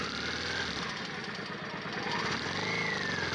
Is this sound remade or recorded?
recorded